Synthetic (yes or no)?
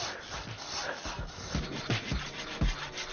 no